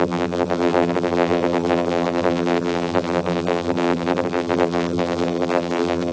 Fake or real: fake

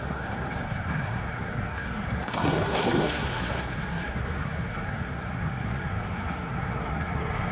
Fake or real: fake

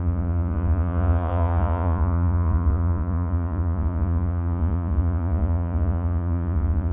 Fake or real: fake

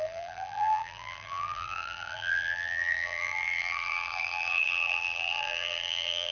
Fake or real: fake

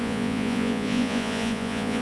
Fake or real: fake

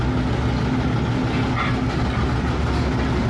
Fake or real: real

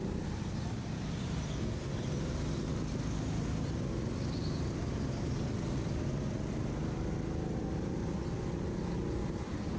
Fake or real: real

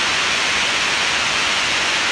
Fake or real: fake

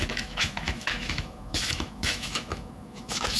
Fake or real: fake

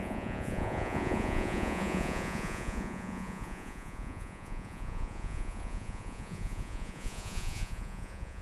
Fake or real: fake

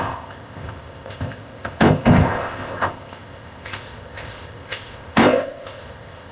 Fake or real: fake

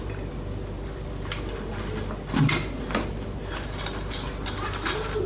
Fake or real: real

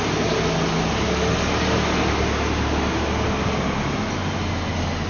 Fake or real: real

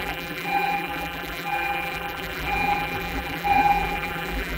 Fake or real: fake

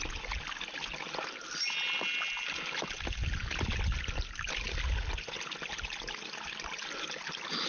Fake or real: real